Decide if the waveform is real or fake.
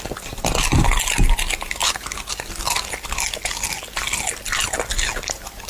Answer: real